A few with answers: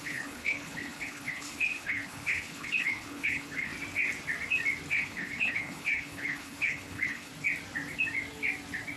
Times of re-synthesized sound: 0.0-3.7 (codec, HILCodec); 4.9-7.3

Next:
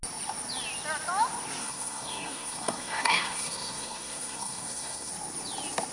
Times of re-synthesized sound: 1.6-5.1 (codec, SNAC)

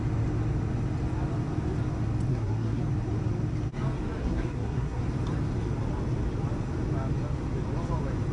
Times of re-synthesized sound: 2.3-2.8 (codec, SNAC); 4.2-5.0

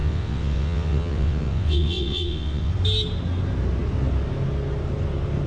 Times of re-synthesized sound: 0.0-2.7 (vocoder, WaveNeXt)

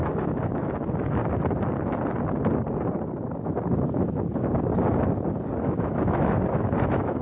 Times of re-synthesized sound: 0.0-1.2 (autoencoder, DAC-VAE); 5.5-7.2